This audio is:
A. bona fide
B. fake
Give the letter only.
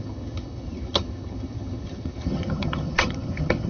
B